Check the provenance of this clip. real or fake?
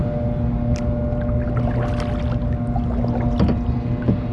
real